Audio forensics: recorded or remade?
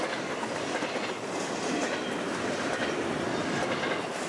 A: recorded